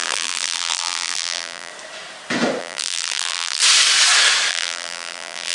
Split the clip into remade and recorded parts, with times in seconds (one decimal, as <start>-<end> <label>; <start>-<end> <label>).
0.0-1.7 remade; 1.7-2.6 recorded; 2.6-3.6 remade; 3.6-4.5 recorded; 4.5-5.5 remade